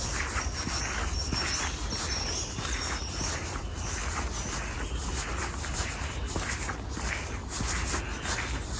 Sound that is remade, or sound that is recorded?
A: recorded